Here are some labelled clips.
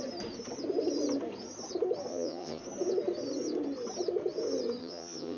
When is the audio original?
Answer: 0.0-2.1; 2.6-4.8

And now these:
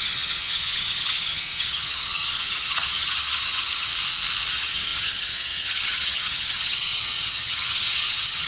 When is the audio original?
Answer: 3.9-4.5

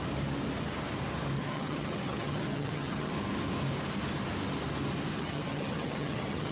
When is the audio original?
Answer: 0.0-1.4; 3.1-5.1

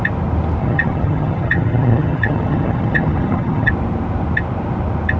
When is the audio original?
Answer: 0.0-0.6; 3.7-5.2

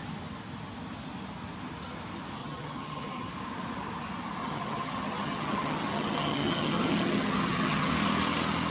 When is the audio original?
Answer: 0.0-2.4; 3.3-4.4; 7.9-8.7

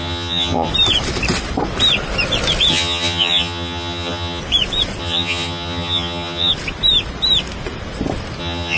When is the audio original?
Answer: 0.7-2.7; 4.4-5.0; 6.5-8.4

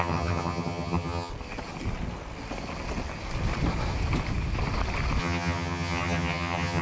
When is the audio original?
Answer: 1.3-5.2